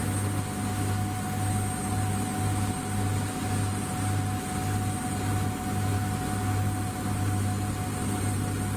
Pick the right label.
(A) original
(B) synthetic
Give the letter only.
A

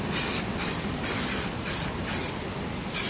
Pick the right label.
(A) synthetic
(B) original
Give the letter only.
B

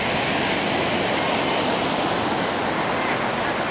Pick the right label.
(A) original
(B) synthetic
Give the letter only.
A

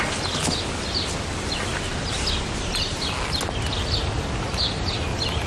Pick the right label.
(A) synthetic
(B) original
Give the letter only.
B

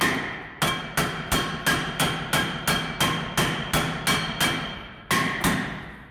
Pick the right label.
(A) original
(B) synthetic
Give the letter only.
A